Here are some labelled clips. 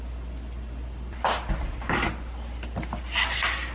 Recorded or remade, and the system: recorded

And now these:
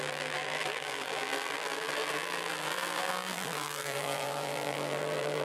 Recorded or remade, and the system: remade, vocoder, BigVGAN v2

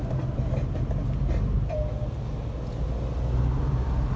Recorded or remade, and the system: recorded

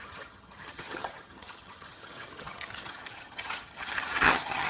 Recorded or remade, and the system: remade, vocoder, HiFi-GAN